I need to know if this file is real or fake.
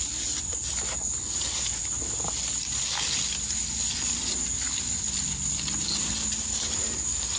real